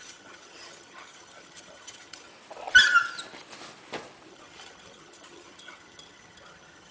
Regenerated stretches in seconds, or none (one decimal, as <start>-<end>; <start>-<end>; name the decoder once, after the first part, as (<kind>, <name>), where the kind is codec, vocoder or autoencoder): 0.0-2.3 (vocoder, HiFi-GAN); 4.3-6.9